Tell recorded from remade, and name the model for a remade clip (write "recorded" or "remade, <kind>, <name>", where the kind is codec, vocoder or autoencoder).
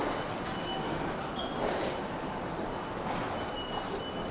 recorded